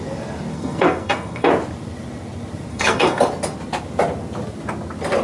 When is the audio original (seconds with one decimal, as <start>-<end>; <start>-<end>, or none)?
0.0-0.5; 1.5-2.7; 3.2-5.2